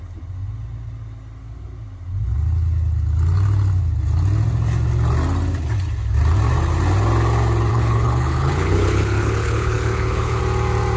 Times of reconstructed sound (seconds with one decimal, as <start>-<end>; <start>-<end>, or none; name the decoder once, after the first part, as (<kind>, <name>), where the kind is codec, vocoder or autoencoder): 7.7-10.4 (codec, HILCodec)